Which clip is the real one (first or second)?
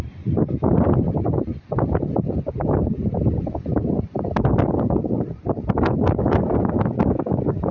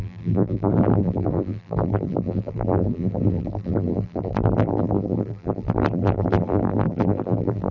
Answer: first